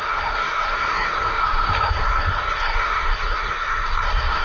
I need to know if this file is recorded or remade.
remade